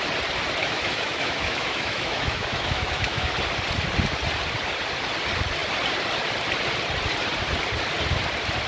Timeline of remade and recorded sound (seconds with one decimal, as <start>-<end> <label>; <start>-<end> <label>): 0.0-0.6 recorded; 0.6-3.3 remade; 3.3-8.7 recorded